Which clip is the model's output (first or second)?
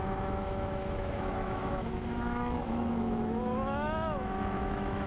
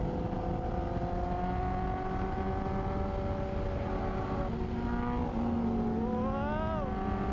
first